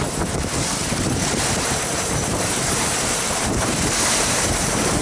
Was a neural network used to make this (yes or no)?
yes